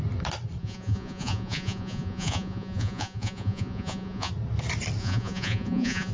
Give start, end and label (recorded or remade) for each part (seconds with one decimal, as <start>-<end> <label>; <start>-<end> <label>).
0.0-0.6 recorded; 0.6-4.3 remade; 4.3-5.0 recorded; 5.0-6.1 remade